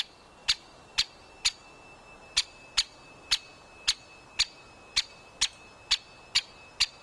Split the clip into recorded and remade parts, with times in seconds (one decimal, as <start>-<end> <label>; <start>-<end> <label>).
0.0-7.0 recorded